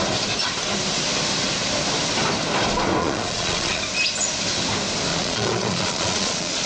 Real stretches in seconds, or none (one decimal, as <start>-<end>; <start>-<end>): 0.0-3.0; 3.8-5.1